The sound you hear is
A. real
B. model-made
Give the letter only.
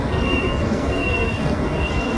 B